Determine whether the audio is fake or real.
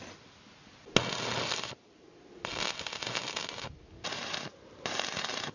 real